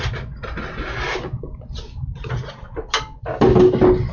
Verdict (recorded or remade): recorded